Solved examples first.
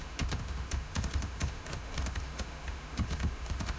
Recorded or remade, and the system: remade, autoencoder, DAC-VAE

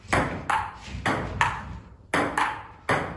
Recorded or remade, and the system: recorded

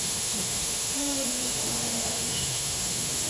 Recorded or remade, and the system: remade, autoencoder, DAC-VAE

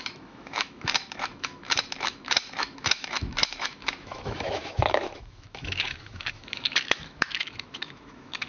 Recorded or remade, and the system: remade, autoencoder, DAC-VAE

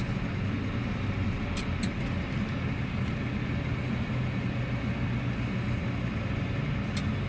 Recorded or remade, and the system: recorded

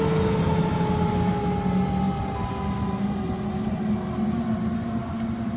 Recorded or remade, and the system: recorded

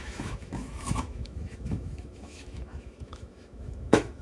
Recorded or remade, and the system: remade, autoencoder, DAC-VAE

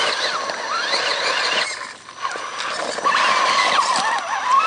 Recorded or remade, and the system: recorded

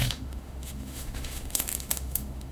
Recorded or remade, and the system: remade, autoencoder, DAC-VAE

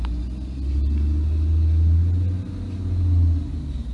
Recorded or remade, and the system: recorded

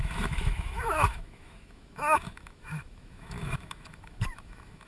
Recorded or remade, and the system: remade, autoencoder, DAC-VAE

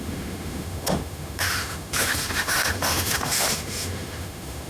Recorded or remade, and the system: remade, autoencoder, DAC-VAE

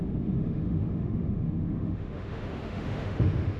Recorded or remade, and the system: remade, autoencoder, DAC-VAE